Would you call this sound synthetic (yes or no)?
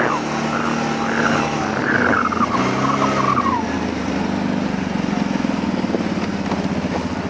no